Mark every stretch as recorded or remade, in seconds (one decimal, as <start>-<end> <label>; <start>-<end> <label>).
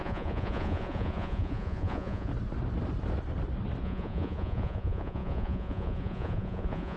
0.0-2.3 remade; 2.3-3.8 recorded; 3.8-7.0 remade